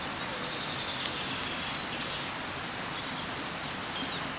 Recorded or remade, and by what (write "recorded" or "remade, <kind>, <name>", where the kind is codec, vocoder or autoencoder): recorded